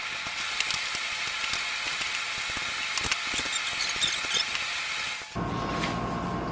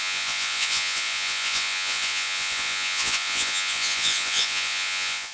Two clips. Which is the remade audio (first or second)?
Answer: second